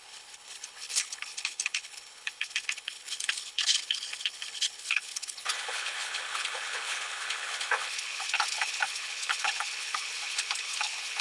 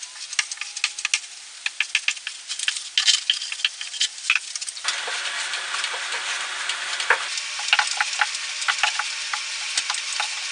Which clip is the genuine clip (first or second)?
second